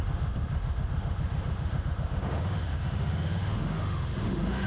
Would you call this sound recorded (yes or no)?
no